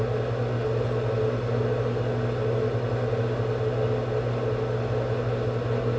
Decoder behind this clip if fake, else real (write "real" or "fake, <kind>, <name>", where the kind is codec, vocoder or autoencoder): real